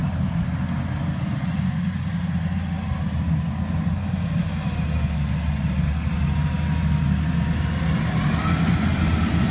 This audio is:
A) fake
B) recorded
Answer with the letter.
B